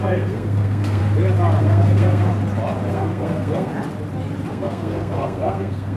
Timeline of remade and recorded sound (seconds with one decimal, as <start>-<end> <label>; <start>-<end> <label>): 0.0-1.0 remade; 1.0-1.6 recorded; 1.6-2.3 remade; 2.3-2.9 recorded; 2.9-3.7 remade; 3.7-4.5 recorded; 4.5-6.0 remade